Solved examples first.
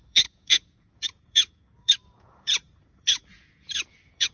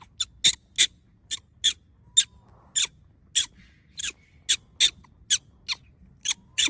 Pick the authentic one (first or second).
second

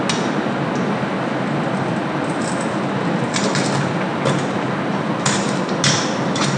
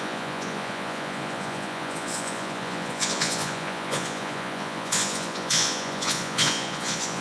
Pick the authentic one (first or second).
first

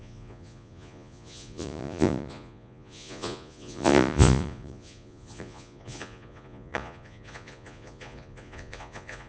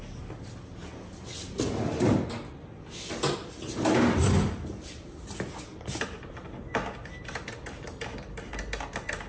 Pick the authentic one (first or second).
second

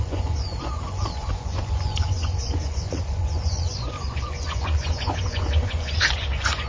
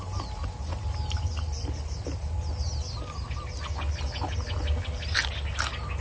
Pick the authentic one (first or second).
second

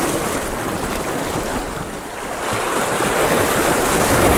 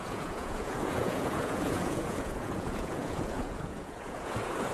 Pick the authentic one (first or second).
first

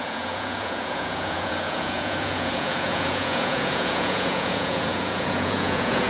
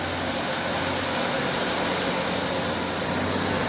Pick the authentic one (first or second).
second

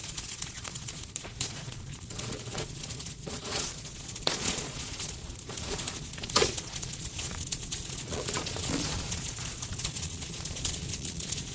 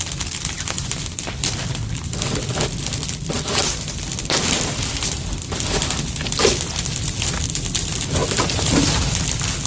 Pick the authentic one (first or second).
second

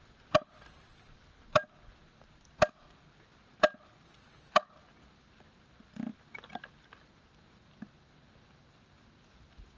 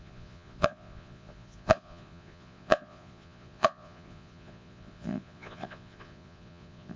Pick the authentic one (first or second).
first